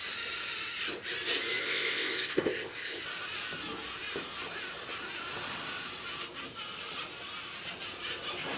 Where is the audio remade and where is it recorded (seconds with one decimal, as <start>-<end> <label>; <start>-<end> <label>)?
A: 0.0-1.6 recorded; 1.6-3.0 remade; 3.0-8.6 recorded